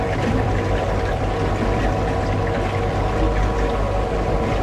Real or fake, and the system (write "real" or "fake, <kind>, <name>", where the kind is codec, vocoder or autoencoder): real